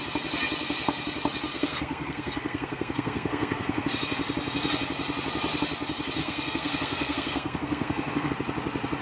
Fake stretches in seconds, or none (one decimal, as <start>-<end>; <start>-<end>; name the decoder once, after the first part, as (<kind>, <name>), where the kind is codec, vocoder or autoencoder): 1.5-3.9 (codec, SNAC); 6.2-8.3